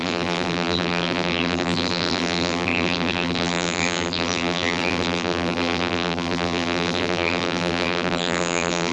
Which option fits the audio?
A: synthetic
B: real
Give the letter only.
A